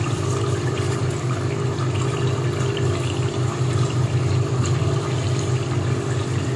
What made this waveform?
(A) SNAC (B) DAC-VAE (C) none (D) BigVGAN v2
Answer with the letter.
D